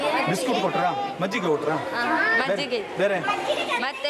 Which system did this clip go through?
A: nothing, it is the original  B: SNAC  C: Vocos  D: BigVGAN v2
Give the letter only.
A